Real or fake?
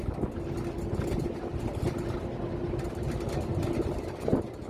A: real